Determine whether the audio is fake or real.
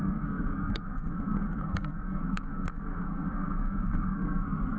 fake